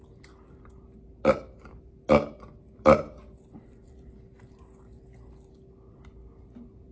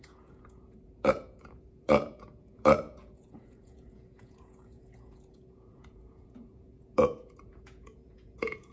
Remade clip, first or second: second